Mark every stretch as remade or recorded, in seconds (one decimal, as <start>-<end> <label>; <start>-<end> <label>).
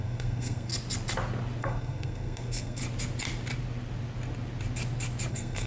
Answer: 0.0-0.7 remade; 0.7-1.6 recorded; 1.6-2.8 remade; 2.8-5.3 recorded; 5.3-5.7 remade